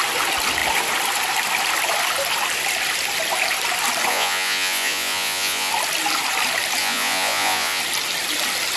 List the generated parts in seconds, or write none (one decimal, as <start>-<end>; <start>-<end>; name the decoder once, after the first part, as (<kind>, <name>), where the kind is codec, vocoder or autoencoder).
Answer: 4.1-5.7 (vocoder, Vocos); 6.8-7.8